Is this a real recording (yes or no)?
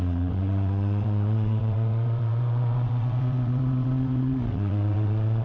no